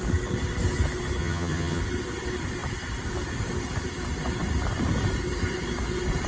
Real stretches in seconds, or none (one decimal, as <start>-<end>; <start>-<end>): 0.0-1.2; 1.8-6.3